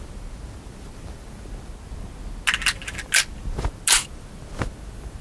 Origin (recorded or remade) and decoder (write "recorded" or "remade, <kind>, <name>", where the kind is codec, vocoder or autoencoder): recorded